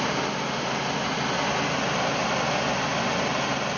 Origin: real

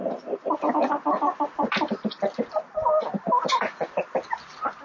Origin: real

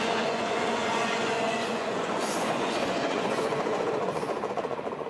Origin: fake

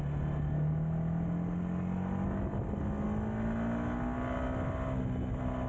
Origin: real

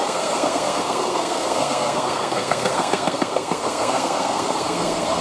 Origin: fake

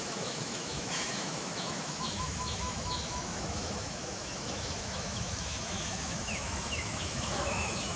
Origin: fake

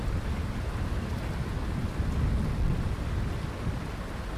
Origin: real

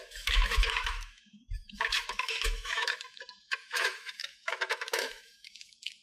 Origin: fake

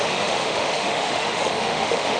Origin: fake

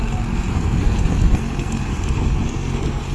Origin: fake